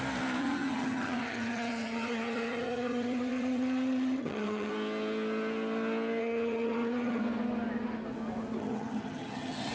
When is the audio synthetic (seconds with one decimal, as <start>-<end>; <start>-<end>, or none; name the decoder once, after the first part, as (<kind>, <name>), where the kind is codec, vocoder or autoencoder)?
0.4-4.7 (vocoder, HiFi-GAN); 6.2-7.2; 8.6-9.7

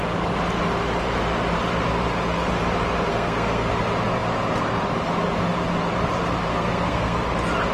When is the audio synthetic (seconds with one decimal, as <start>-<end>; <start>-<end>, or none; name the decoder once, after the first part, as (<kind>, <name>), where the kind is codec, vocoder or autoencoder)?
3.1-3.7 (codec, SNAC); 6.5-7.2

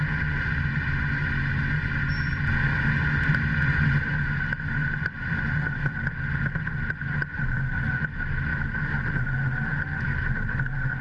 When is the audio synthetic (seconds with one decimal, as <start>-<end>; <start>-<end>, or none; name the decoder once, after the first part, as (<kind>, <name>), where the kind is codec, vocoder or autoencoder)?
none

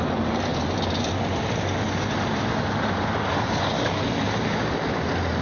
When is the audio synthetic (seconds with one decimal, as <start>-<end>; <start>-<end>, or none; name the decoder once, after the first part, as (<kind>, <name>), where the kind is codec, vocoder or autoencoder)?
none

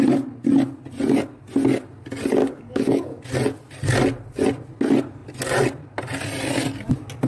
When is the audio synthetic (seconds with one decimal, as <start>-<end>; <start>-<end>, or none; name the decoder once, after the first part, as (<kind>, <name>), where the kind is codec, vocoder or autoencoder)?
2.4-3.2 (codec, DAC)

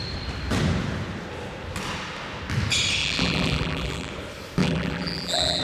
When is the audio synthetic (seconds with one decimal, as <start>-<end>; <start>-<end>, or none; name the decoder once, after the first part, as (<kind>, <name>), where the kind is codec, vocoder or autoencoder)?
3.0-4.1 (vocoder, BigVGAN v2); 4.6-5.6